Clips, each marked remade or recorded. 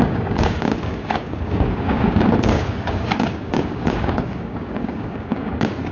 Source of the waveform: remade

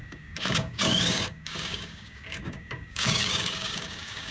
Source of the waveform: remade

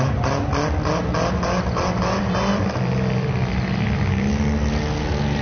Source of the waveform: recorded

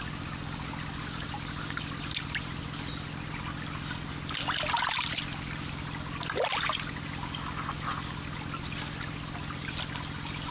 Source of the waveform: recorded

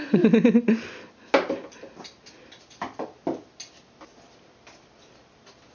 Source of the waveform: recorded